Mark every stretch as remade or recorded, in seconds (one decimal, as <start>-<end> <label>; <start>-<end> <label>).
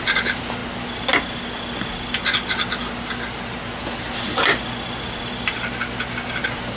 0.0-6.8 recorded